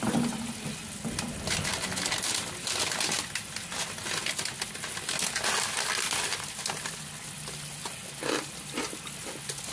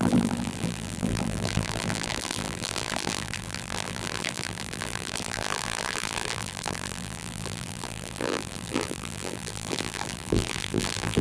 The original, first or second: first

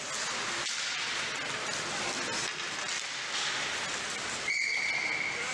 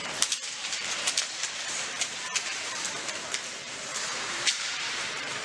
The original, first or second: first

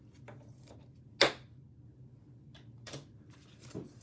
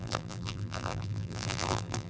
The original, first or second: first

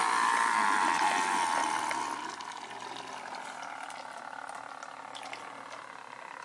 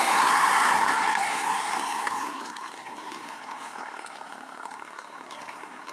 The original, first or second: first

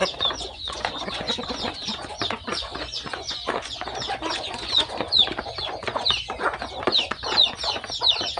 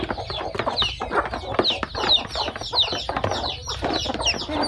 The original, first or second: second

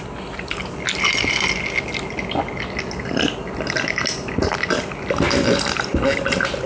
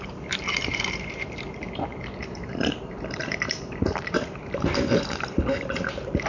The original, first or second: first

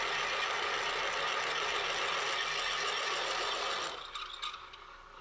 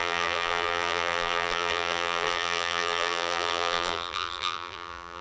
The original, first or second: first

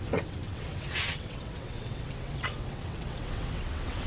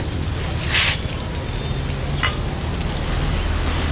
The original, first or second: second